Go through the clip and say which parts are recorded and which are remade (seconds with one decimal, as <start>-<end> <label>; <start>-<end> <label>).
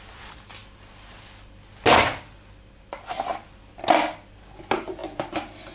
0.0-5.7 recorded